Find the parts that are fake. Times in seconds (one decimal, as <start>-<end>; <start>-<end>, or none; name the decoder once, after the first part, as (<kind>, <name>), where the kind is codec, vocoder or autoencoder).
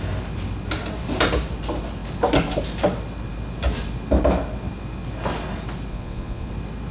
5.9-6.5 (vocoder, Vocos)